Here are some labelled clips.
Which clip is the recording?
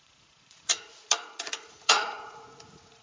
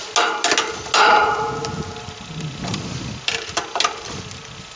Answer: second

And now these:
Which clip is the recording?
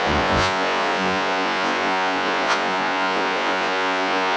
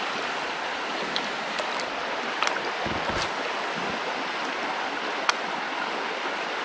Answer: second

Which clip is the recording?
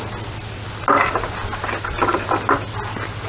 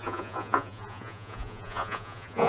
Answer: first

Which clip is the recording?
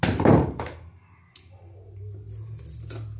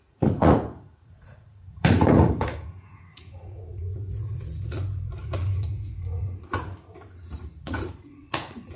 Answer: first